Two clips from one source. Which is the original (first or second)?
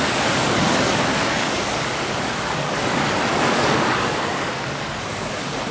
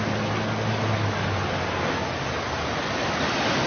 second